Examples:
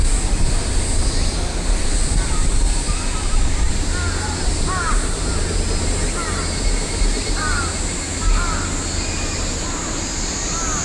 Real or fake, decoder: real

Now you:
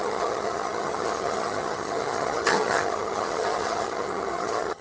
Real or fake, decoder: fake, vocoder, HiFi-GAN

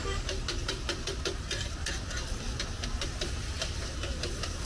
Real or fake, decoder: real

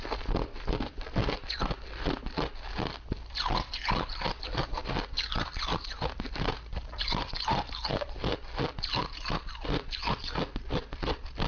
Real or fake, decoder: real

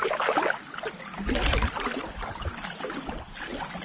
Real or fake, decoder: real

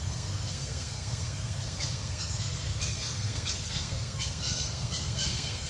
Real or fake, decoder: fake, codec, SNAC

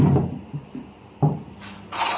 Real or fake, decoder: real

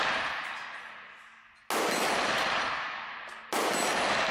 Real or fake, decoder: real